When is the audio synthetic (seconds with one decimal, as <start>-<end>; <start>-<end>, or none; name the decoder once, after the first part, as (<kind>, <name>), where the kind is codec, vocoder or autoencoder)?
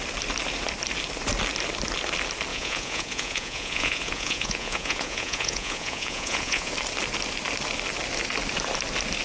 2.5-6.7 (vocoder, Vocos)